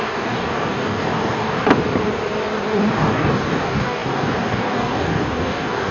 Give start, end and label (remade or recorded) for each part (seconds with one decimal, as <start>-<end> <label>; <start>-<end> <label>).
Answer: 0.0-1.7 remade; 1.7-2.9 recorded; 2.9-5.9 remade